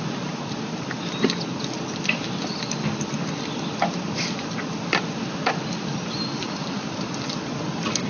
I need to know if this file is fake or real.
real